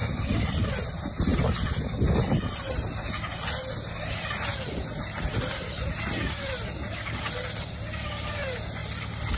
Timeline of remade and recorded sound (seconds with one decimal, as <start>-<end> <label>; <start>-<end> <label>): 0.0-0.7 remade; 0.7-8.8 recorded; 8.8-9.4 remade